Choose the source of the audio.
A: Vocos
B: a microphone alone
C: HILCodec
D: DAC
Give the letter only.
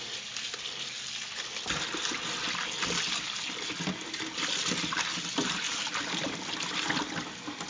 B